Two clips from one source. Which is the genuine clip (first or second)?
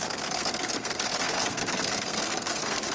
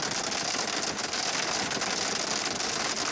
second